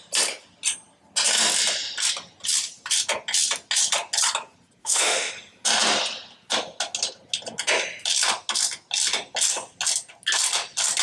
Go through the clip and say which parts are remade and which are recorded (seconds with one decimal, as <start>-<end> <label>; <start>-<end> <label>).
0.0-4.8 recorded; 4.8-5.3 remade; 5.3-11.0 recorded

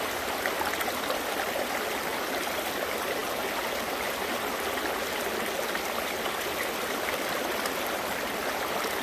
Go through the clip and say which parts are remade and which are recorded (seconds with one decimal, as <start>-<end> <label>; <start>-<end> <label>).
0.0-9.0 recorded

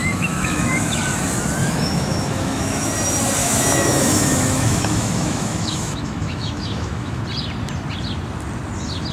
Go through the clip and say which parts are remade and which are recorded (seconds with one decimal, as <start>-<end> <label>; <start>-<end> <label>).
0.0-1.0 remade; 1.0-1.6 recorded; 1.6-2.9 remade; 2.9-3.4 recorded; 3.4-7.2 remade; 7.2-9.1 recorded

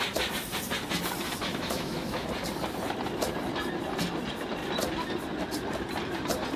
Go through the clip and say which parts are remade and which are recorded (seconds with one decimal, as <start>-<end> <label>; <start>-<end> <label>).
0.0-1.5 recorded; 1.5-2.3 remade; 2.3-6.6 recorded

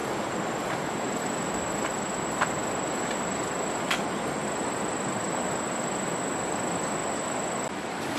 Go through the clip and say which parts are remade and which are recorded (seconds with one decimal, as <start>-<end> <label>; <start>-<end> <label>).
0.0-8.2 recorded

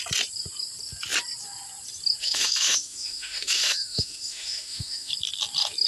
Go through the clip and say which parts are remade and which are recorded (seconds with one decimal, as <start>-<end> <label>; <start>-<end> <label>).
0.0-2.2 recorded; 2.2-5.1 remade; 5.1-5.9 recorded